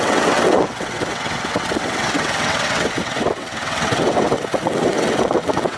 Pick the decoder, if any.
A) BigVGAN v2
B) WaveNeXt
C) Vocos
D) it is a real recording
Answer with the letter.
B